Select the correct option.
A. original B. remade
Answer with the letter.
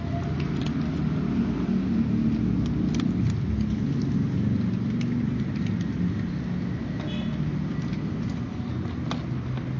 A